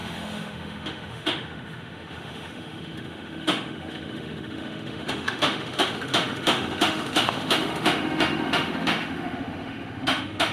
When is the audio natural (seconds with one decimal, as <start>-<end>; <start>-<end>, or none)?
none